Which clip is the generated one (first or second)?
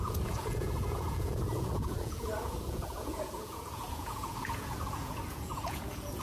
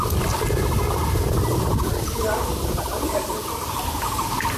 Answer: first